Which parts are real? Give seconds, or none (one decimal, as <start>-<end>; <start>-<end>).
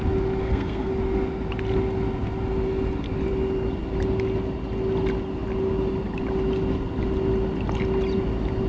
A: 0.0-0.4; 0.9-8.7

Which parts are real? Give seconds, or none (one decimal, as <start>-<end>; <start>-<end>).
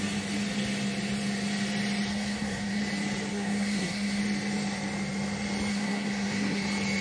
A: 0.0-2.1; 2.8-3.3; 4.2-5.7; 6.6-7.0